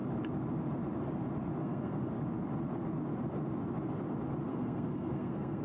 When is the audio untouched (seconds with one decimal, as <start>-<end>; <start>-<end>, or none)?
0.0-1.6; 2.1-4.5